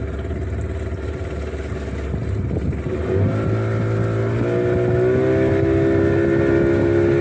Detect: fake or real real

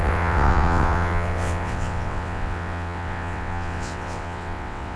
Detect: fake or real fake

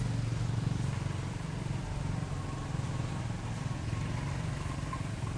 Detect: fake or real real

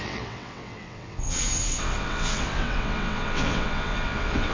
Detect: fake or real fake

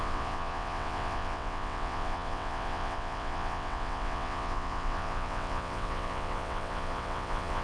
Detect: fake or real fake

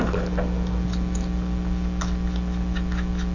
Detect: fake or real real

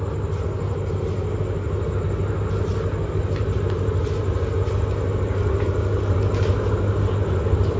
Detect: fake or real real